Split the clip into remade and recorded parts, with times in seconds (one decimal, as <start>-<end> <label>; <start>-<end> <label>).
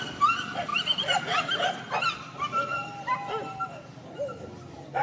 0.0-2.7 remade; 2.7-5.0 recorded